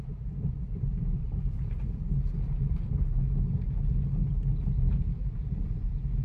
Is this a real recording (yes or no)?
yes